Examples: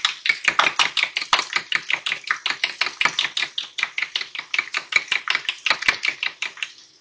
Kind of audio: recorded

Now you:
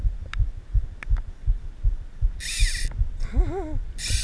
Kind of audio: recorded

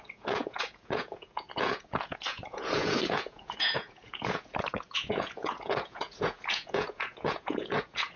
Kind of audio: remade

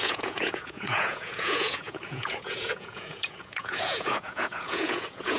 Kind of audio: remade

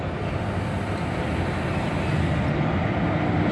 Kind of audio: recorded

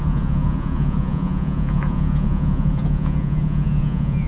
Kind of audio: remade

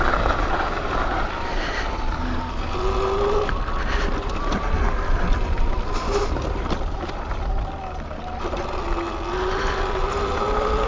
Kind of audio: recorded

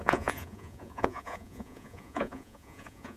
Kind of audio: remade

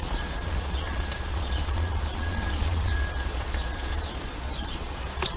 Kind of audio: remade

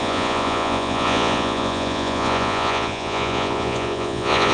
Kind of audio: remade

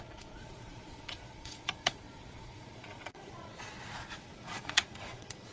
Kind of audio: remade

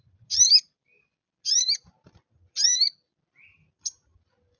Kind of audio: recorded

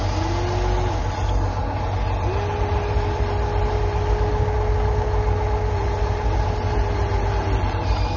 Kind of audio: recorded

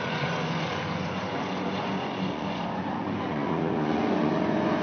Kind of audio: remade